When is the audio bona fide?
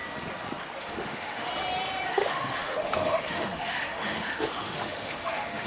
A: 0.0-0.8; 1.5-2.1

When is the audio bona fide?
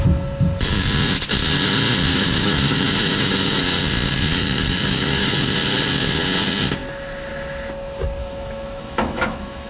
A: 0.0-2.1; 3.8-4.3; 5.3-8.2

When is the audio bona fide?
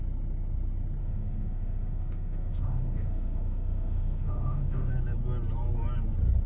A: 0.0-1.0; 4.9-6.5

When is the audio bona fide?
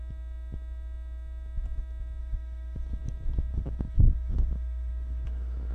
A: 0.0-2.2; 2.8-3.5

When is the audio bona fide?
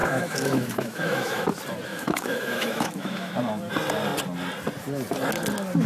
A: 1.5-1.9; 3.3-5.9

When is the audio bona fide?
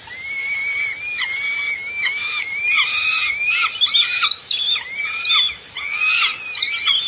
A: 0.0-1.8; 2.4-7.1